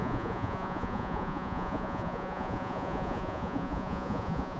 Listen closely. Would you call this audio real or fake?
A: fake